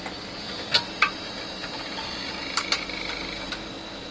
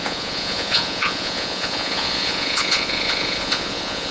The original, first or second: first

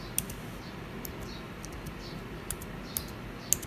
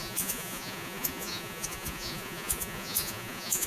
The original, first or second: first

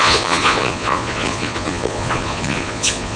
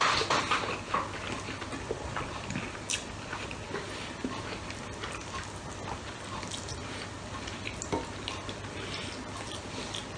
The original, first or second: second